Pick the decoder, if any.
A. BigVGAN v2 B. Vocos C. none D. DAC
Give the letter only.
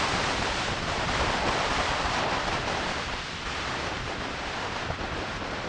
A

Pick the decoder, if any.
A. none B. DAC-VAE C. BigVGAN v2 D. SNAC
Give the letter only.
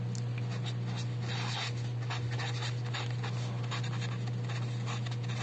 A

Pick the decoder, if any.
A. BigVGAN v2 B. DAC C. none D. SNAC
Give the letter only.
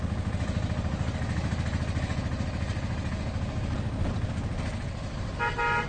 C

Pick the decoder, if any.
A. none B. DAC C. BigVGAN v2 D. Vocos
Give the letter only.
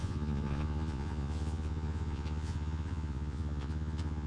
D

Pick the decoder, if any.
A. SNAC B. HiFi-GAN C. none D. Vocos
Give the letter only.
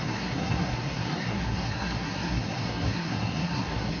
A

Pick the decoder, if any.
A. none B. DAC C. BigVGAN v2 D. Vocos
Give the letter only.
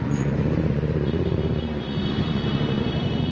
D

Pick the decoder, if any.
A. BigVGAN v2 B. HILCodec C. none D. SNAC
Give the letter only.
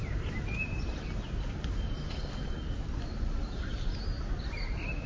C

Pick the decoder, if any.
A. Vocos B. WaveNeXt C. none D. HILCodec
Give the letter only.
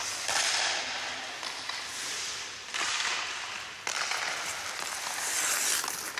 C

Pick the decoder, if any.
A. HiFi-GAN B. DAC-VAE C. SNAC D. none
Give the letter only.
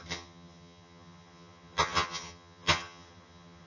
A